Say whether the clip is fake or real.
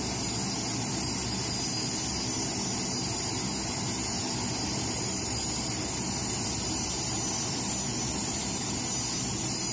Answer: real